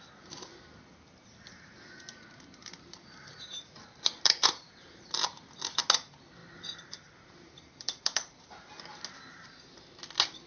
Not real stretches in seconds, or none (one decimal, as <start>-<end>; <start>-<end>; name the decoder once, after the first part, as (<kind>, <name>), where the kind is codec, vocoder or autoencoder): 2.6-5.4 (vocoder, BigVGAN v2); 6.4-8.7